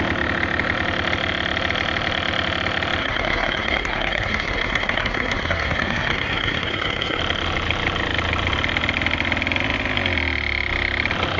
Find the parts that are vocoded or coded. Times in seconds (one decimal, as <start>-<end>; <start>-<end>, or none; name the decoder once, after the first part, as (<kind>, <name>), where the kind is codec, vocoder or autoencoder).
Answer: 3.0-7.2 (codec, SNAC)